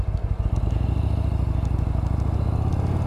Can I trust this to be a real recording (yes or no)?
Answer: yes